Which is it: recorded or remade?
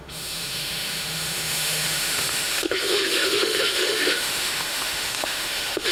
remade